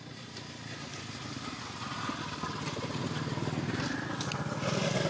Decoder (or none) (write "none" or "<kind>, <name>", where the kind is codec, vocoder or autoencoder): none